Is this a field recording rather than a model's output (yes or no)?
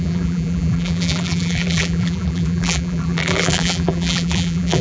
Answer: no